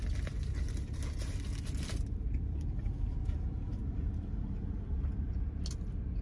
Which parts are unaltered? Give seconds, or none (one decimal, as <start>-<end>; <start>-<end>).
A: 3.8-5.7